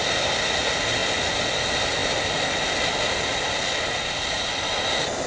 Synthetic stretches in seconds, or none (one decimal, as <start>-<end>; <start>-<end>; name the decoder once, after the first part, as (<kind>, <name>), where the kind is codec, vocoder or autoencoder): none